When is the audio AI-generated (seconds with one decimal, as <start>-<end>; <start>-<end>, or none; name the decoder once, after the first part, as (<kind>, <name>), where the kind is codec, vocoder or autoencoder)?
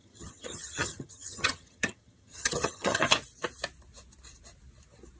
0.0-3.1 (vocoder, HiFi-GAN)